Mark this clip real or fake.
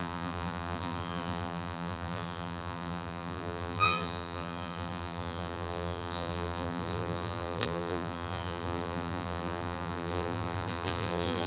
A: fake